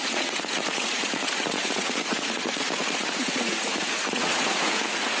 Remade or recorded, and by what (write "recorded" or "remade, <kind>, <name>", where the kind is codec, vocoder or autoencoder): remade, vocoder, Vocos